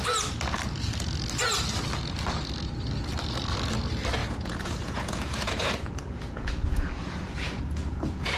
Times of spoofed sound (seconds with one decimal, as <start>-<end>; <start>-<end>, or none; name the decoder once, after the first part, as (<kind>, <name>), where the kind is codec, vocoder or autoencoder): 4.2-8.4 (vocoder, Vocos)